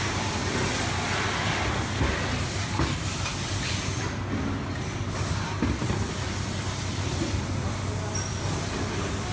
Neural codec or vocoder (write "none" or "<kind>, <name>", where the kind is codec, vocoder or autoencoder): none